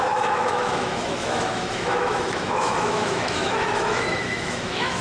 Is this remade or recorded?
remade